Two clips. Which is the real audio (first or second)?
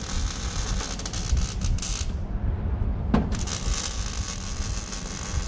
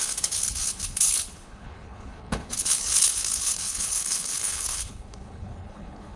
first